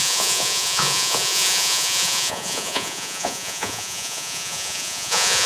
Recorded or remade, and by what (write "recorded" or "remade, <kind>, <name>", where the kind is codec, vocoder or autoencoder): remade, vocoder, Vocos